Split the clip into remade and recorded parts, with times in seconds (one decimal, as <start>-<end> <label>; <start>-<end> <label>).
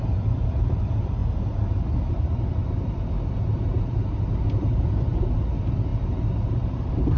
0.0-7.2 recorded